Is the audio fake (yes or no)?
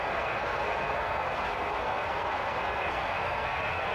yes